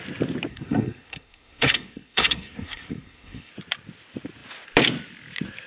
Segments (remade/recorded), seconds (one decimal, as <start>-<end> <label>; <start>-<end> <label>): 0.0-0.5 recorded; 0.5-3.5 remade; 3.5-5.7 recorded